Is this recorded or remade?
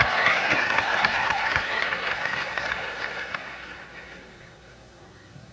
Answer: remade